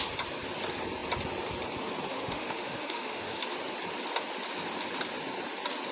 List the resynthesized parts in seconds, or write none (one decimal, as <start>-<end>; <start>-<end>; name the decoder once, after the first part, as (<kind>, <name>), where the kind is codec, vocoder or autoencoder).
2.1-3.4 (autoencoder, DAC-VAE)